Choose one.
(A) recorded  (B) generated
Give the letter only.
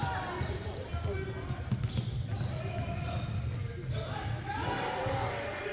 A